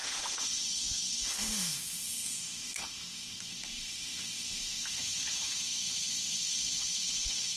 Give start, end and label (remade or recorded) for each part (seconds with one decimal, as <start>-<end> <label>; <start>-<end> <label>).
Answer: 0.0-7.6 remade